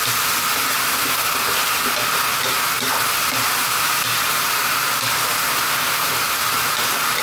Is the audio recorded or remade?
recorded